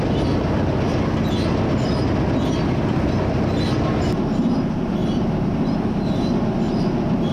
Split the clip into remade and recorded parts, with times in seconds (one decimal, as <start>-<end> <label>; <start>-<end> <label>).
0.0-7.3 recorded